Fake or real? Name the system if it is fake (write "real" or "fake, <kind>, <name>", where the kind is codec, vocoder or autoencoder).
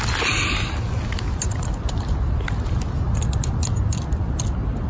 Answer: real